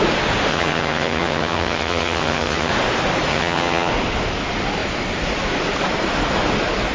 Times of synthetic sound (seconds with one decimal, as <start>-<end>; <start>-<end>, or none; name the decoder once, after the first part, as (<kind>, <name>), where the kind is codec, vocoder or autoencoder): 0.5-2.7 (vocoder, HiFi-GAN); 3.3-3.9